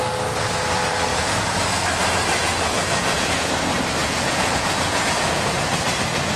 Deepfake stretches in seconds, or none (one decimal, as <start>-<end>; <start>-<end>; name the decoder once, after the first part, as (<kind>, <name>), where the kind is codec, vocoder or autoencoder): 1.1-1.6 (vocoder, Vocos); 2.4-3.5; 4.0-5.5